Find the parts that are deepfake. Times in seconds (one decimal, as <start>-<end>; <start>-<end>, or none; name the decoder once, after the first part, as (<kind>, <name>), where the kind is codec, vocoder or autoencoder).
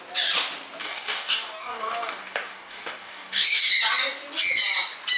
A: 0.8-3.7 (codec, DAC)